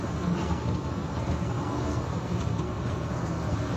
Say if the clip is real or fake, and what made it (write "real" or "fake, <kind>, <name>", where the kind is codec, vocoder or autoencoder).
fake, codec, SNAC